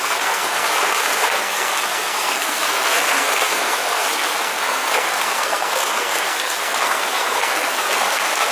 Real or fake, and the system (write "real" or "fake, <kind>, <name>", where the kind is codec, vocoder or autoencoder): fake, codec, SNAC